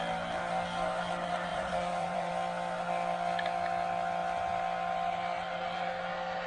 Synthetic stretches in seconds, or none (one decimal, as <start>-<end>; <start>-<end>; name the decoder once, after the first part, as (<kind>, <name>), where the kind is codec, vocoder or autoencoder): 1.5-2.3 (vocoder, Vocos)